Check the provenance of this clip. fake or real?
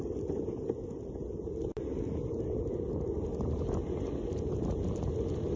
real